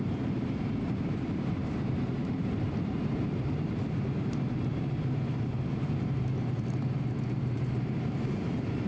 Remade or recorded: remade